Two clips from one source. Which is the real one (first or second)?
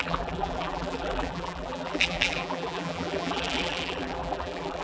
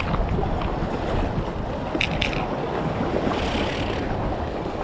second